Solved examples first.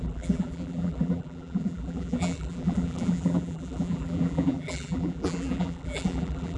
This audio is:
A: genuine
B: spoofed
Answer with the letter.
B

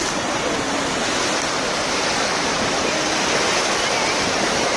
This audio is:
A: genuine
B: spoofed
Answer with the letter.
A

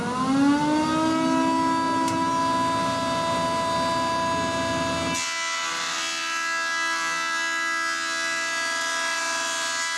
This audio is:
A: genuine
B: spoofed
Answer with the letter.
A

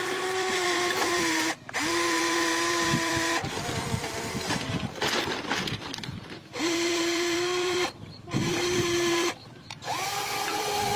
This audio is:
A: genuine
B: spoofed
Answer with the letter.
B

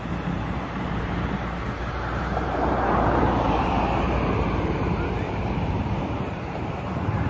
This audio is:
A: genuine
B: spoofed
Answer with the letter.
B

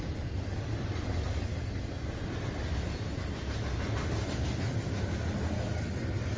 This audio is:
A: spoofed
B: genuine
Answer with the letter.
B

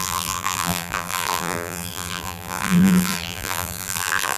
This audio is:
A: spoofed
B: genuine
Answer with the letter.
A